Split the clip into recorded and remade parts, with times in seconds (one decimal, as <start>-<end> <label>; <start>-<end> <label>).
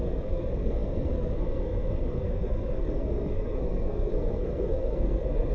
0.0-5.5 remade